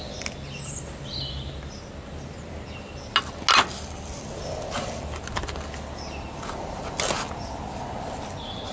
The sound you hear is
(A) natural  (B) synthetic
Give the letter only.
A